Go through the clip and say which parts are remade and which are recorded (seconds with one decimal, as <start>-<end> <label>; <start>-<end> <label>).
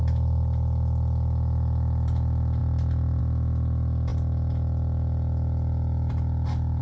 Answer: 0.0-6.8 recorded